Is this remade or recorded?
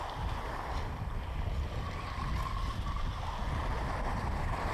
recorded